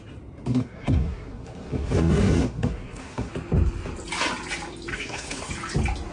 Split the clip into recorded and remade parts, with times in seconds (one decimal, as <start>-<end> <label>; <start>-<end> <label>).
0.0-0.5 recorded; 0.5-3.3 remade; 3.3-4.9 recorded; 4.9-5.5 remade; 5.5-6.1 recorded